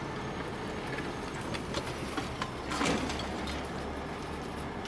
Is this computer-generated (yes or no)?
no